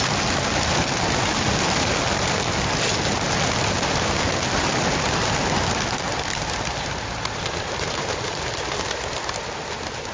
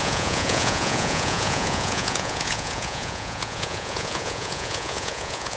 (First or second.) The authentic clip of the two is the first